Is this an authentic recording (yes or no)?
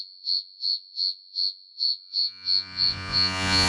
no